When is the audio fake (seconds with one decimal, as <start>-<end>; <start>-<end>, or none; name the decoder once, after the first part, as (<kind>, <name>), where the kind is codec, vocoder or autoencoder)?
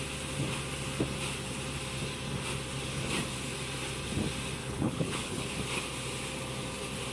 4.6-5.5 (codec, HILCodec)